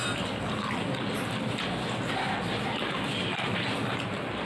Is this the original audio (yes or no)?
yes